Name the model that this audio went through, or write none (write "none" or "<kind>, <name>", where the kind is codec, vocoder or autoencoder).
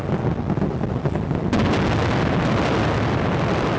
none